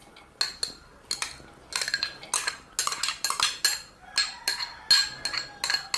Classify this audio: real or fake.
real